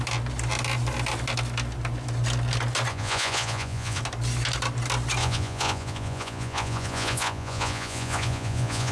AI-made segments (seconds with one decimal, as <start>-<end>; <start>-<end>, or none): 2.9-4.0; 5.2-8.9